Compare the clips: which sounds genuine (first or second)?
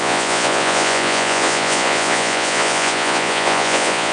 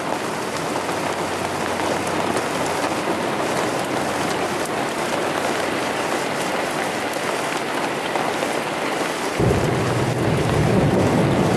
second